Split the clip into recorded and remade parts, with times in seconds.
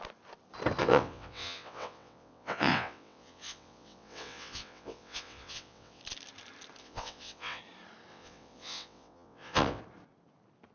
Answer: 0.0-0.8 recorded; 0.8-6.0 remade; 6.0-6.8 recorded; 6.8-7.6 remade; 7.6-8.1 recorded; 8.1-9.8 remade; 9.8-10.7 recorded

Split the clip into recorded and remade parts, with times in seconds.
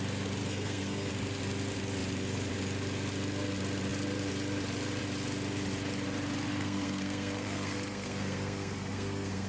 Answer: 0.0-0.4 recorded; 0.4-1.1 remade; 1.1-6.5 recorded; 6.5-9.5 remade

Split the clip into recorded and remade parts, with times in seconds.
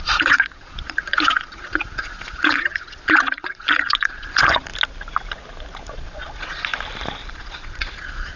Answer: 0.0-4.7 remade; 4.7-5.9 recorded; 5.9-6.7 remade; 6.7-7.3 recorded; 7.3-8.4 remade